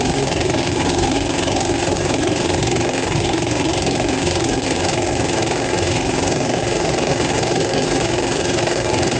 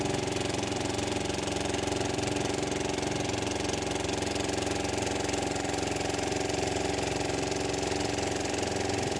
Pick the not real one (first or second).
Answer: first